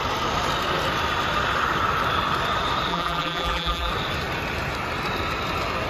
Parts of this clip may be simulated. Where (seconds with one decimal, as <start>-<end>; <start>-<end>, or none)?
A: 2.9-3.9